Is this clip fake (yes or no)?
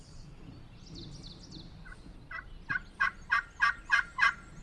no